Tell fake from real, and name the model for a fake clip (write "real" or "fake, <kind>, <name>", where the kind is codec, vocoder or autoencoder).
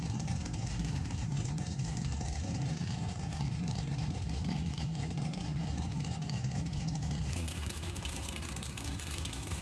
fake, codec, SNAC